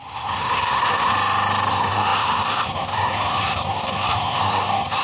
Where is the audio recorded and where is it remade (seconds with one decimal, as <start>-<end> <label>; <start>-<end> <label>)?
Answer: 0.0-1.1 remade; 1.1-1.7 recorded; 1.7-5.0 remade